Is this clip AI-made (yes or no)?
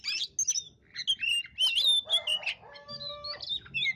no